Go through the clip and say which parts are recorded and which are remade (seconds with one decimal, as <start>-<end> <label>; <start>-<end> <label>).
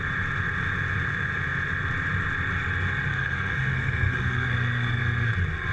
0.0-3.1 recorded; 3.1-5.0 remade; 5.0-5.7 recorded